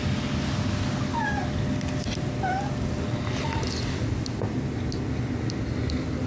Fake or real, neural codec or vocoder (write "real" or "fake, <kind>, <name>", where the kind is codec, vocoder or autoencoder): real